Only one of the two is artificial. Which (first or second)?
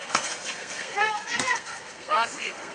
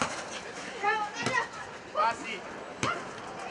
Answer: first